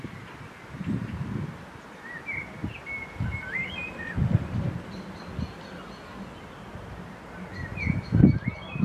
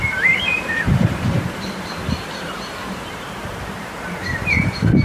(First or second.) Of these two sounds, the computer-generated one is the second